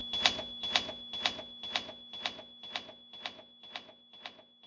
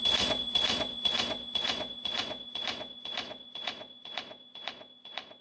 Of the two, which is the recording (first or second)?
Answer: first